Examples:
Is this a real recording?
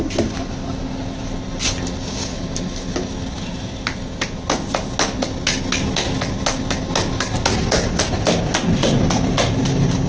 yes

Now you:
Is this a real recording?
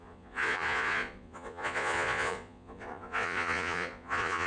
no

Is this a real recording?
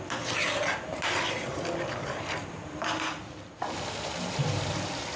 no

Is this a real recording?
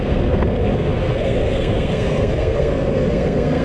no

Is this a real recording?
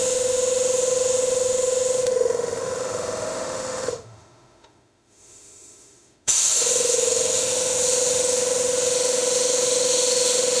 no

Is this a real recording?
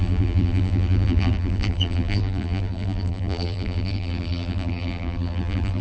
no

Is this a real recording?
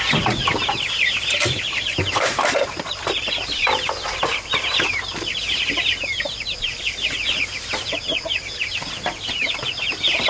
no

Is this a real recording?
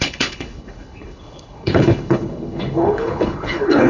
no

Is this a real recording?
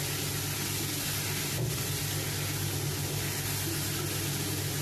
yes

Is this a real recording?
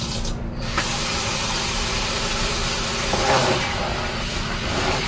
no